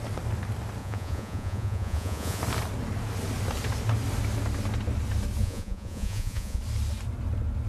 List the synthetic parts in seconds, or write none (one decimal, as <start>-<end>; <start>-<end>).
0.8-2.4; 5.4-6.6